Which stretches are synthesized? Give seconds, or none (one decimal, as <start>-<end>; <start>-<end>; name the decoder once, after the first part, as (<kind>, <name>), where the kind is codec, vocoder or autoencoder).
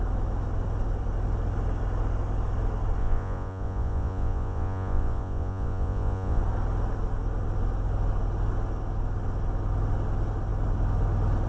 3.0-6.4 (vocoder, Vocos)